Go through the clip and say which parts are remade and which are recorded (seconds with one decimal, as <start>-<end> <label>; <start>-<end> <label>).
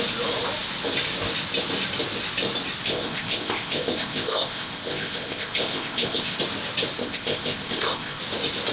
0.0-2.8 recorded; 2.8-6.4 remade; 6.4-7.0 recorded; 7.0-8.2 remade; 8.2-8.7 recorded